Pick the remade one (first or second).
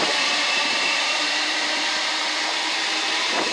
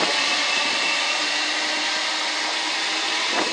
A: first